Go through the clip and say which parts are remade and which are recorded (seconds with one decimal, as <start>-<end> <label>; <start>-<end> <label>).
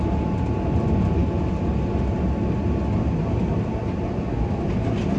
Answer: 0.0-5.2 recorded